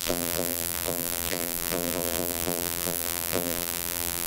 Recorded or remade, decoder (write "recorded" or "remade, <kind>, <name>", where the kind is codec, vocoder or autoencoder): remade, vocoder, BigVGAN v2